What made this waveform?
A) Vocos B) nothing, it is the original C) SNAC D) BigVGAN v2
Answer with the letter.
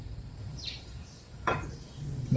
D